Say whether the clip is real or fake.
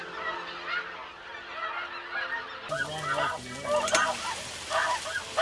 real